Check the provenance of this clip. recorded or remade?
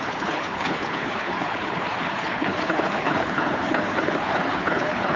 remade